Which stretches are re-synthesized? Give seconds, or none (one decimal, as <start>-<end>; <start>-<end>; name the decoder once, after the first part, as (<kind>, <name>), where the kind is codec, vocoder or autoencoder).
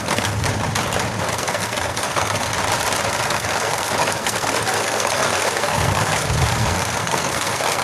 0.0-0.5 (codec, SNAC); 1.2-2.5; 3.1-7.8